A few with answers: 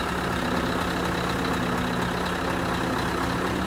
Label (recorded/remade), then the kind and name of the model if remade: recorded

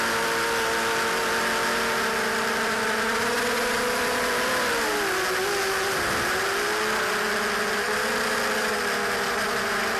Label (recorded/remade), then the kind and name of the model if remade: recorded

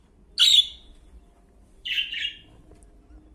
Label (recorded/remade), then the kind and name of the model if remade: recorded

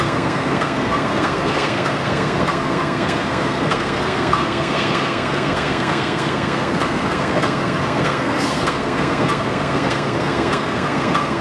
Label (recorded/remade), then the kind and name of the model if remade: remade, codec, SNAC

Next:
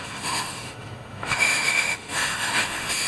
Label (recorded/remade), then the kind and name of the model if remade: remade, autoencoder, DAC-VAE